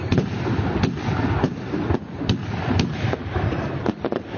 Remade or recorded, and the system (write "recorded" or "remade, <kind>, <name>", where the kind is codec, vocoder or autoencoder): recorded